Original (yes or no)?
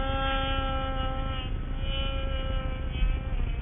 yes